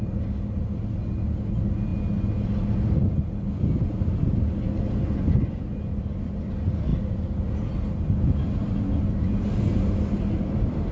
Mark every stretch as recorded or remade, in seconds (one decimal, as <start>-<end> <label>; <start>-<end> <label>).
0.0-10.9 recorded